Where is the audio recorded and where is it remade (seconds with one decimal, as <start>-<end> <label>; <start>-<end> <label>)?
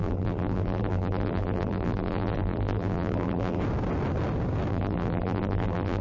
0.0-3.6 remade; 3.6-4.7 recorded; 4.7-6.0 remade